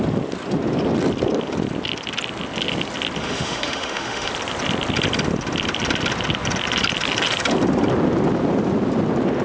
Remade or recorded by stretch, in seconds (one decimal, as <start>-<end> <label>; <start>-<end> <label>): 0.0-3.2 recorded; 3.2-4.3 remade; 4.3-9.4 recorded